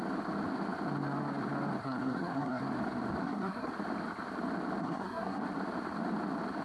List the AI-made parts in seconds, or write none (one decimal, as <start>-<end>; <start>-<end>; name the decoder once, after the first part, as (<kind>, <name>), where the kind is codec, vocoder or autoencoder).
1.8-2.6 (codec, SNAC); 3.2-3.7; 4.8-5.4